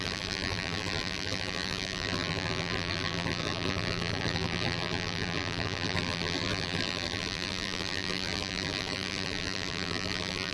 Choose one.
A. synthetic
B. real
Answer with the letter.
A